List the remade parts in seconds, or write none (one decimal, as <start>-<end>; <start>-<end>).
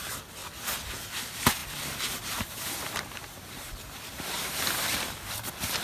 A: 1.6-5.1